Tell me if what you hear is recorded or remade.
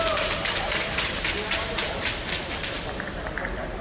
remade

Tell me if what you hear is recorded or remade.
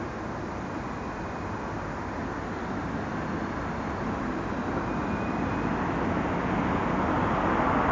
recorded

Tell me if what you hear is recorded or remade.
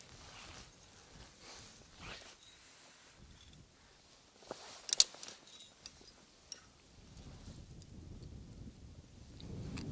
recorded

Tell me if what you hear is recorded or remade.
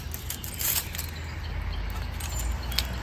recorded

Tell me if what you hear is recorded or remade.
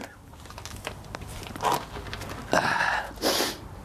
recorded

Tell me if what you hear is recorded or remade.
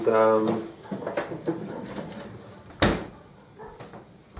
recorded